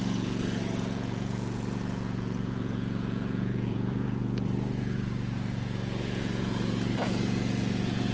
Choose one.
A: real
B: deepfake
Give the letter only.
B